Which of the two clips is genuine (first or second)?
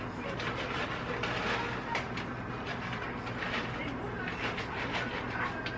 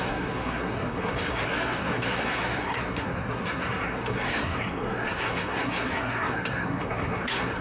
first